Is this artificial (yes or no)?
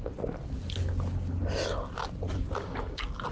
no